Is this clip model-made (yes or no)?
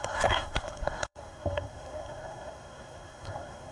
yes